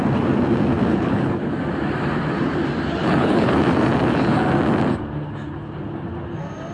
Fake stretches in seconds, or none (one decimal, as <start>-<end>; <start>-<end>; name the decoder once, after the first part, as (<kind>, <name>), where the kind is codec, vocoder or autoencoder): 0.9-1.5 (codec, HILCodec); 3.0-3.6